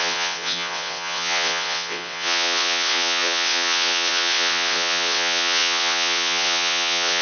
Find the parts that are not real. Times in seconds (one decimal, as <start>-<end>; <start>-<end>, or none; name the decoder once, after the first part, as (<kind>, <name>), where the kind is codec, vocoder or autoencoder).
0.0-7.2 (vocoder, WaveNeXt)

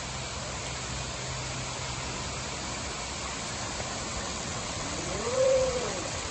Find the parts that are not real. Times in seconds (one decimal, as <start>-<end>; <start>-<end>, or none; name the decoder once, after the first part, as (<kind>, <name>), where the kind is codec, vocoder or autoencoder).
4.1-6.3 (vocoder, WaveNeXt)

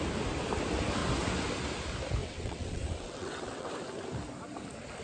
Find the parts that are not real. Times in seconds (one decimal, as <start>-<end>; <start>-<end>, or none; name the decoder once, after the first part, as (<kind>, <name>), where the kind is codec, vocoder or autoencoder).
2.2-3.7 (vocoder, WaveNeXt)

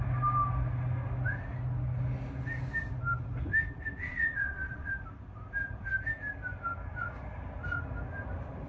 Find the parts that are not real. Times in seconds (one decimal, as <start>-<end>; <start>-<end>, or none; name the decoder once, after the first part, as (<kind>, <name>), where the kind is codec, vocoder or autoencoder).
4.0-4.9 (vocoder, WaveNeXt)

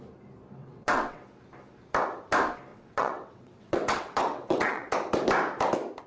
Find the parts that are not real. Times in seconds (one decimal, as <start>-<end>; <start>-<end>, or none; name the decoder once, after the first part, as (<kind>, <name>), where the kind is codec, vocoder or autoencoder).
0.6-1.2 (vocoder, WaveNeXt); 2.7-4.9